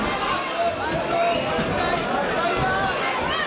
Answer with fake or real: real